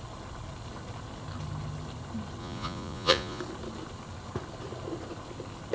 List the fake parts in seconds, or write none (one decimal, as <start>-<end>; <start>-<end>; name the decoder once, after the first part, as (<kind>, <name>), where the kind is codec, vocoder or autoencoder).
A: 2.4-3.4 (vocoder, Vocos)